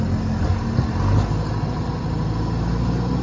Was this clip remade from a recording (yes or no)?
no